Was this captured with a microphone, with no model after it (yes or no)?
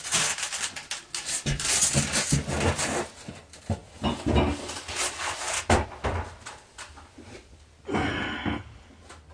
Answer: yes